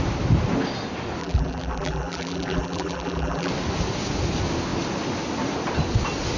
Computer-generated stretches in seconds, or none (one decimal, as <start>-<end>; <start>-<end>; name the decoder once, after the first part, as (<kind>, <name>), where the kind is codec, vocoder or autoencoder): 1.2-3.5 (vocoder, BigVGAN v2)